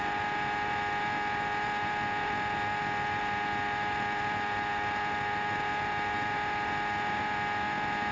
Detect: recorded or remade recorded